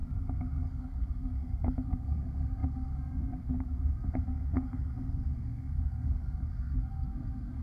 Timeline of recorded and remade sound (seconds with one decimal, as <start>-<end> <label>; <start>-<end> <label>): 0.0-7.6 remade

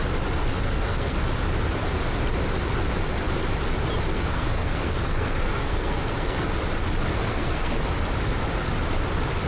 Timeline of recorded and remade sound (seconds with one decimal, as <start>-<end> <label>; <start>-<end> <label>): 0.0-0.5 recorded; 0.5-1.2 remade; 1.2-4.1 recorded; 4.1-6.5 remade; 6.5-7.1 recorded; 7.1-8.0 remade; 8.0-9.5 recorded

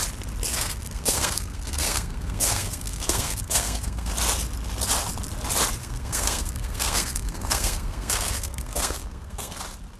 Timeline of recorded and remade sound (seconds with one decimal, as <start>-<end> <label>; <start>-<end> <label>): 0.0-0.5 recorded; 0.5-4.1 remade; 4.1-5.8 recorded; 5.8-9.6 remade; 9.6-10.0 recorded